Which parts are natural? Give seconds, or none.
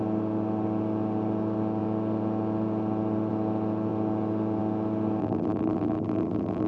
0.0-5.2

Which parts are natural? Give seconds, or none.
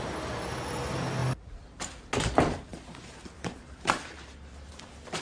0.0-1.2; 1.8-2.7; 4.7-5.2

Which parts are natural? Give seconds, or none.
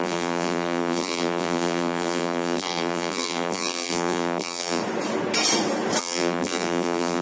4.8-6.0